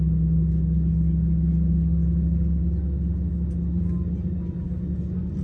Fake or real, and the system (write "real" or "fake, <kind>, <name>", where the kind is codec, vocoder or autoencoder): real